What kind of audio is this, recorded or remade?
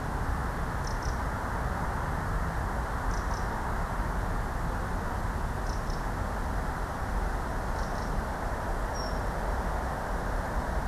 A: recorded